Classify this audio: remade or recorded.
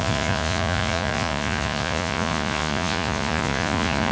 remade